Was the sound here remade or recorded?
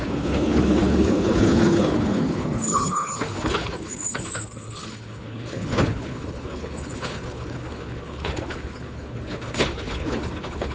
remade